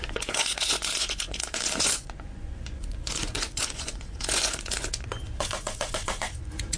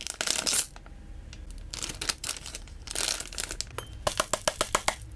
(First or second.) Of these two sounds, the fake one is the first